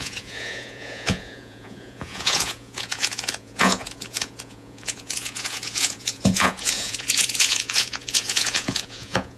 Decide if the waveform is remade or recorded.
remade